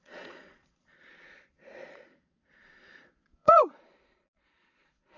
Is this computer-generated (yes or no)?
yes